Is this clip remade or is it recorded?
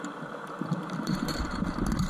remade